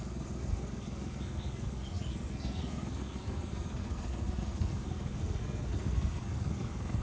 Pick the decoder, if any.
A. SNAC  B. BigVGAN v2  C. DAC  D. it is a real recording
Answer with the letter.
A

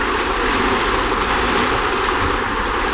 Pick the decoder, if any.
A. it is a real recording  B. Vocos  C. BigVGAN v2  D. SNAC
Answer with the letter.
A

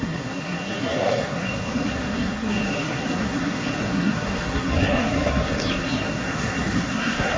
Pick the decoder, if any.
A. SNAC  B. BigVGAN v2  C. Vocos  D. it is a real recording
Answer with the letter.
A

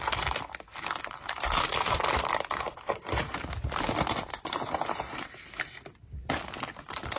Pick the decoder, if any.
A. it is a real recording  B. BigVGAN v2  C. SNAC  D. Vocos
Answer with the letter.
A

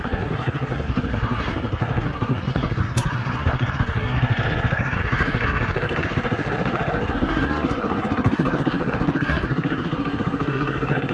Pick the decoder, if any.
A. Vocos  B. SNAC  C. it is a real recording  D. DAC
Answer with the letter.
B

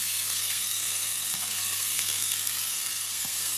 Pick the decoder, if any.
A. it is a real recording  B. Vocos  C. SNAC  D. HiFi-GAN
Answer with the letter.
C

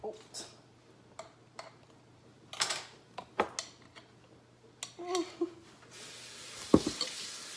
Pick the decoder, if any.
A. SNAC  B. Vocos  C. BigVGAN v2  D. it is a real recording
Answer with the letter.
D